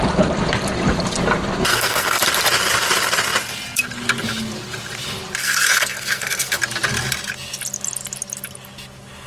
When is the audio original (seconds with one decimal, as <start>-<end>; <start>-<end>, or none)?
0.0-1.7; 2.2-5.4; 6.6-9.3